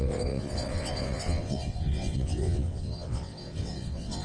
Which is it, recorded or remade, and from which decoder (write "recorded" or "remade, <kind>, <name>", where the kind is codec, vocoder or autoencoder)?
remade, vocoder, WaveNeXt